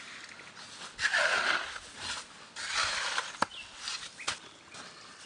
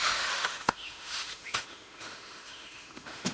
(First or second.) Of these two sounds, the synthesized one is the second